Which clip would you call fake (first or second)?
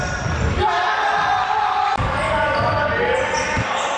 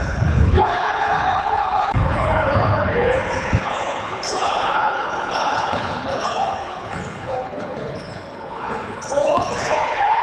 second